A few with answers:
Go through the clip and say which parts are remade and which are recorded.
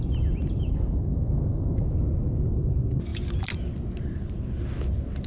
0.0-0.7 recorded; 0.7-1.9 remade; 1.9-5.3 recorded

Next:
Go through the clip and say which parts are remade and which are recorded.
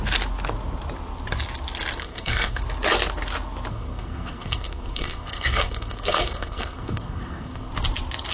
0.0-2.0 recorded; 2.0-2.6 remade; 2.6-3.7 recorded; 3.7-7.7 remade; 7.7-8.3 recorded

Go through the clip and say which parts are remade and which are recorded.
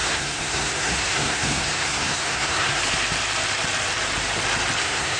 0.0-2.8 remade; 2.8-4.8 recorded; 4.8-5.2 remade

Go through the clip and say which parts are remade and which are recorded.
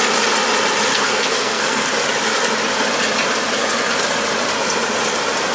0.0-0.9 recorded; 0.9-1.9 remade; 1.9-5.5 recorded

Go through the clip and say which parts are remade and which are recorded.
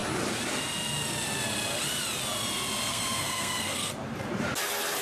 0.0-2.9 recorded; 2.9-3.9 remade; 3.9-5.0 recorded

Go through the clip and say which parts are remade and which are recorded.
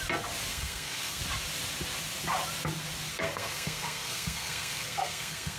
0.0-0.5 recorded; 0.5-1.2 remade; 1.2-3.1 recorded; 3.1-5.6 remade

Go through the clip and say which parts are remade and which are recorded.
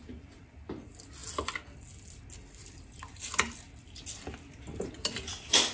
0.0-5.7 recorded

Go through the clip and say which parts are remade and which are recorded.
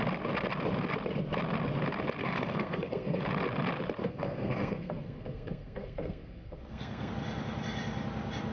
0.0-2.2 recorded; 2.2-3.2 remade; 3.2-4.0 recorded; 4.0-7.1 remade; 7.1-8.5 recorded